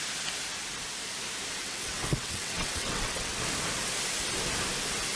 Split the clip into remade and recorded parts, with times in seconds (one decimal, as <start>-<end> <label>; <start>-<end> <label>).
0.0-1.6 recorded; 1.6-3.3 remade; 3.3-5.2 recorded